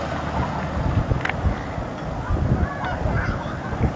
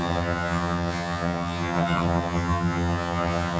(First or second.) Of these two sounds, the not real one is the second